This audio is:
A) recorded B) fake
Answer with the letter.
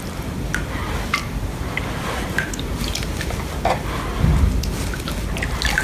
A